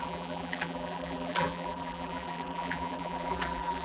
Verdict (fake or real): fake